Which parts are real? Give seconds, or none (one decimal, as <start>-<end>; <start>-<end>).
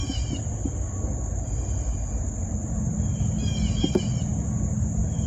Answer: 2.6-3.8; 4.3-5.3